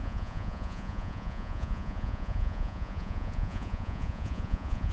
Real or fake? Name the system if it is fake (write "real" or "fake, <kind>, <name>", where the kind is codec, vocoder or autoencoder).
fake, vocoder, Vocos